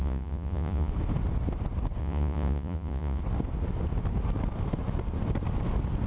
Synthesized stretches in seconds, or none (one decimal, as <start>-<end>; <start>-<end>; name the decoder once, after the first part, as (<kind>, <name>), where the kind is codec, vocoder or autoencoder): 0.0-0.9 (vocoder, Vocos); 2.0-3.2